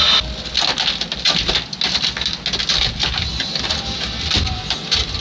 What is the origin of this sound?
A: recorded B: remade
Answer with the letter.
A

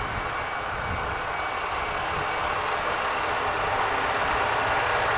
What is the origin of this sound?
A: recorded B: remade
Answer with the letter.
A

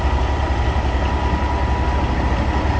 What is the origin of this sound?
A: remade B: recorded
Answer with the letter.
B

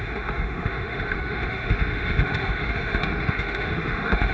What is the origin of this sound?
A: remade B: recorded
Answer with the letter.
A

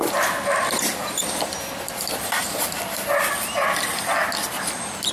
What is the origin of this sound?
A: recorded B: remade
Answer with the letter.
A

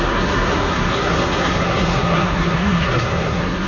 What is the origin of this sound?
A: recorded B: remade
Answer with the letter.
B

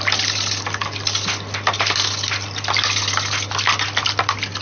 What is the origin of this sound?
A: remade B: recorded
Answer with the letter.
B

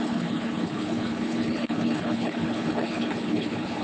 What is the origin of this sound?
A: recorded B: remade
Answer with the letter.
B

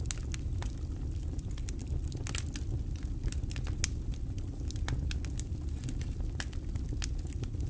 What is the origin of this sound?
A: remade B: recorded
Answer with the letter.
B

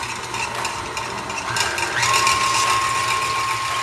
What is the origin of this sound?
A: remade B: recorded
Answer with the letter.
B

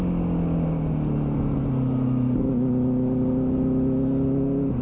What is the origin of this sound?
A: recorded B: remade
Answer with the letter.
A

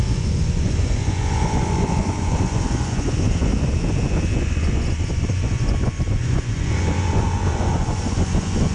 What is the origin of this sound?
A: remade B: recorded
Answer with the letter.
A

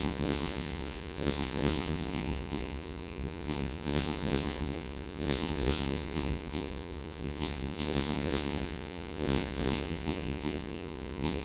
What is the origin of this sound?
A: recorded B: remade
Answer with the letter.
B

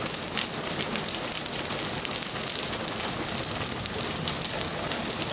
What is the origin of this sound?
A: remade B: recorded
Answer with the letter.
B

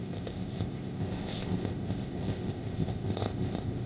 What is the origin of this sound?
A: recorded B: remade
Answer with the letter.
B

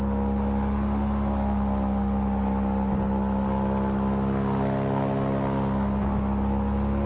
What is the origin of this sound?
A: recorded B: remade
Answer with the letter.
A